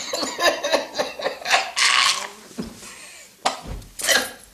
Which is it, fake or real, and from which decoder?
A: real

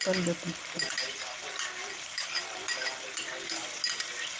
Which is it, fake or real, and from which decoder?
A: real